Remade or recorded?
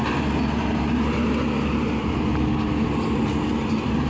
recorded